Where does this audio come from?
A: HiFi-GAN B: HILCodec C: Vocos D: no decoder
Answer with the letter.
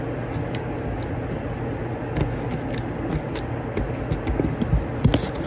D